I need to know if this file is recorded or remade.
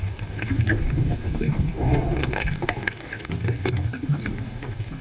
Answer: remade